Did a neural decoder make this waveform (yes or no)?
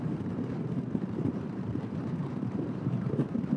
yes